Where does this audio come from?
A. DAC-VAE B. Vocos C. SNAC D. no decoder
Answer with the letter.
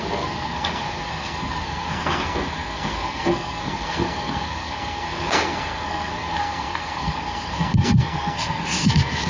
C